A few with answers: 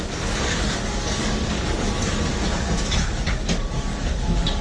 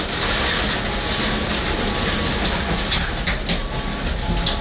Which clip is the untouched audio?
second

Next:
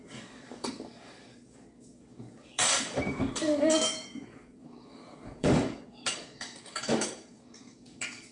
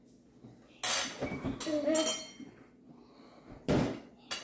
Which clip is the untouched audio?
second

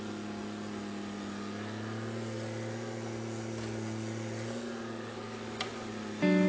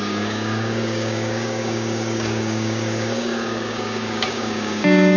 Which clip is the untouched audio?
first